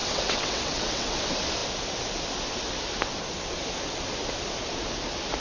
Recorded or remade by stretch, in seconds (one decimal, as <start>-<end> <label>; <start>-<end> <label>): 0.0-1.2 remade; 1.2-5.4 recorded